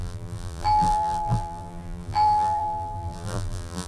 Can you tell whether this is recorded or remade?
remade